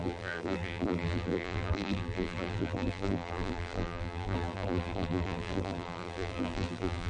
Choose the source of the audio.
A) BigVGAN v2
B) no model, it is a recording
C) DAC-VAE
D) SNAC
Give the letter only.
A